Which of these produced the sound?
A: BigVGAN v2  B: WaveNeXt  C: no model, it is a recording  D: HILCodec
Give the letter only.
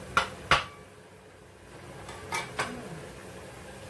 C